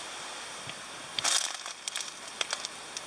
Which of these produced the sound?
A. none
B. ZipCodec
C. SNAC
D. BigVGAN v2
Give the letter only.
A